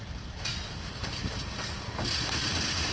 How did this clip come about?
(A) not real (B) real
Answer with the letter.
A